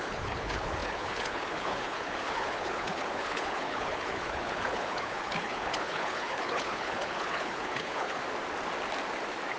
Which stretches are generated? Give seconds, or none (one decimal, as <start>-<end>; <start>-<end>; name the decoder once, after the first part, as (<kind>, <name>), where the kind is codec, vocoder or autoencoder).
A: 0.0-8.2 (codec, HILCodec)